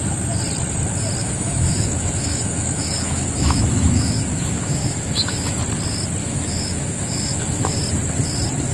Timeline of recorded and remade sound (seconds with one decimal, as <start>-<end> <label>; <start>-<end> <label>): 0.0-1.2 recorded; 1.2-5.6 remade; 5.6-6.2 recorded; 6.2-7.8 remade; 7.8-8.7 recorded